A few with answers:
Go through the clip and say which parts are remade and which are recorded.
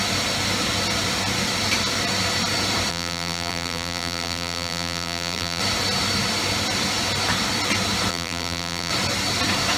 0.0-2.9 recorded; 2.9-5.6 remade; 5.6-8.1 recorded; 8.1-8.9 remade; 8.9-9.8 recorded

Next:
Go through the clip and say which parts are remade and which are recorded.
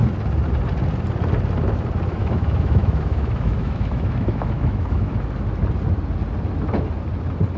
0.0-2.2 recorded; 2.2-5.1 remade; 5.1-7.6 recorded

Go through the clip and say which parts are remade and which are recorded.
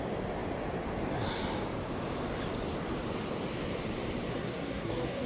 0.0-4.3 recorded; 4.3-5.3 remade